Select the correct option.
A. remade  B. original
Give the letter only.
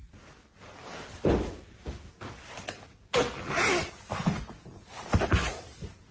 B